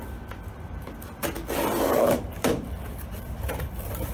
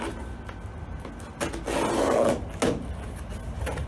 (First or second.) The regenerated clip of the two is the first